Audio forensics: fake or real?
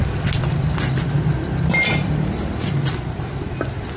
real